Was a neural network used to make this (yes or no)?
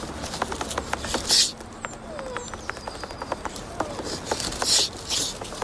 no